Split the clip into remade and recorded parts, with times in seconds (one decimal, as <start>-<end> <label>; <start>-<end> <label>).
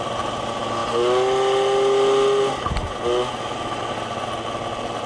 0.0-5.1 recorded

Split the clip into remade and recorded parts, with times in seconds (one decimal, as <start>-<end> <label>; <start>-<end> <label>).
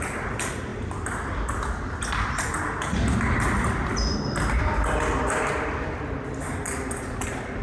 0.0-7.6 recorded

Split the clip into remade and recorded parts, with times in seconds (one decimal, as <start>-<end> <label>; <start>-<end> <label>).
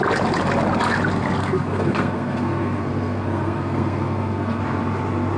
0.0-1.4 recorded; 1.4-4.6 remade; 4.6-5.4 recorded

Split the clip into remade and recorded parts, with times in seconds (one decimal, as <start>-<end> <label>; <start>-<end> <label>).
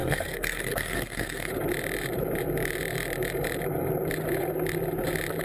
0.0-1.5 remade; 1.5-5.4 recorded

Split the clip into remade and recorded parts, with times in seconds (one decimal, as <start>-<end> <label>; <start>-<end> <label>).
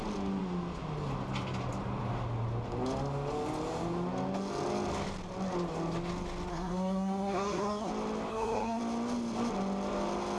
0.0-6.5 recorded; 6.5-7.9 remade; 7.9-8.3 recorded; 8.3-8.8 remade; 8.8-10.4 recorded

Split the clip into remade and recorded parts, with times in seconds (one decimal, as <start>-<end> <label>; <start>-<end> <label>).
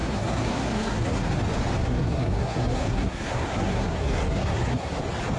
0.0-1.3 remade; 1.3-1.8 recorded; 1.8-5.0 remade; 5.0-5.4 recorded